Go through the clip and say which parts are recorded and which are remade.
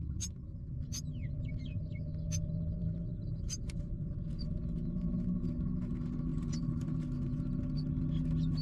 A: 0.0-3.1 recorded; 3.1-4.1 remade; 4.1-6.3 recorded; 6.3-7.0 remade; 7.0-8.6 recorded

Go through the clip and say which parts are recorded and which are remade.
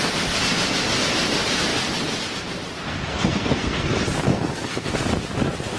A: 0.0-2.8 recorded; 2.8-3.9 remade; 3.9-4.3 recorded; 4.3-4.9 remade; 4.9-5.8 recorded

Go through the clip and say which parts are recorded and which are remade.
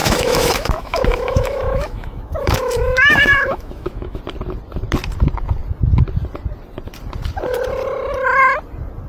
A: 0.0-4.2 remade; 4.2-9.1 recorded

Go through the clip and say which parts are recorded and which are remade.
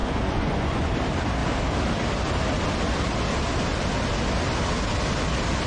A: 0.0-0.9 remade; 0.9-5.7 recorded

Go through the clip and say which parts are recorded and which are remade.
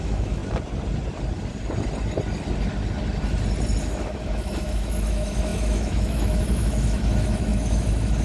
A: 0.0-0.4 remade; 0.4-3.8 recorded; 3.8-8.2 remade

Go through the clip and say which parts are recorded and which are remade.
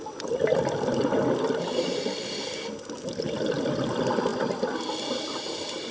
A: 0.0-5.9 recorded